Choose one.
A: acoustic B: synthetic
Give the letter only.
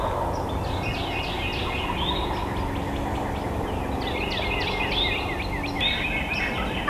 A